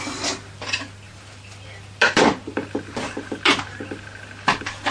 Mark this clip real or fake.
real